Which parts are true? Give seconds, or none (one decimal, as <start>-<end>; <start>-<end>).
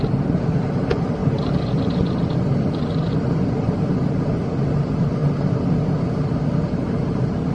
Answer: 0.0-1.2; 4.1-7.5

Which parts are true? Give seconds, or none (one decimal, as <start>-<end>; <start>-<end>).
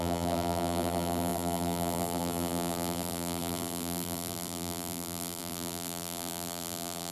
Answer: none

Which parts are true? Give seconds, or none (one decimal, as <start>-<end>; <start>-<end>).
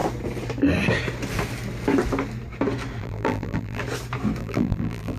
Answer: 0.0-3.0; 3.8-4.4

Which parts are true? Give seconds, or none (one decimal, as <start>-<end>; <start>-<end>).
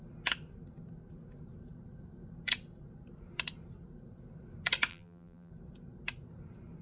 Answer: 0.0-4.9; 5.5-6.8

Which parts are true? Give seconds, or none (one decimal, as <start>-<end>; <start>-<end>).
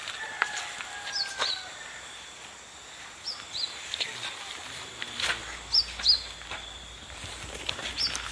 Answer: 0.0-8.3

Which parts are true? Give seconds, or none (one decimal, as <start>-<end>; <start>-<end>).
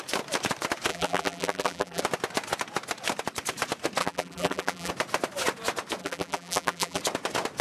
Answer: 0.0-0.9; 2.0-4.0; 4.9-6.0; 7.0-7.6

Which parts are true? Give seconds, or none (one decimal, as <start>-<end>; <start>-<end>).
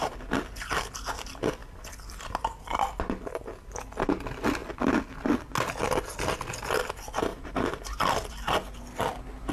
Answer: 0.0-7.3; 8.3-9.5